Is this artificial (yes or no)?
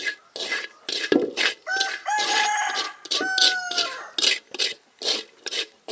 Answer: no